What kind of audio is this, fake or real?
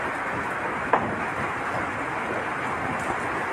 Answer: real